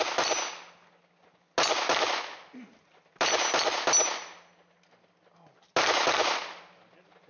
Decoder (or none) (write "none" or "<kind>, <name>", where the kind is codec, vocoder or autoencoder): none